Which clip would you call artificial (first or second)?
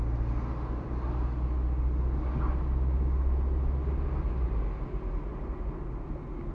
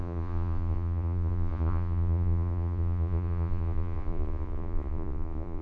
second